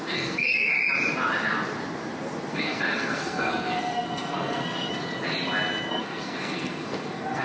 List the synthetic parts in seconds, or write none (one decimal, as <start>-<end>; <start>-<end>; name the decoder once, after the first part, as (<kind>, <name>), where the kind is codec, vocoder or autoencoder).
0.0-0.7 (codec, SNAC); 2.5-4.9; 5.9-7.4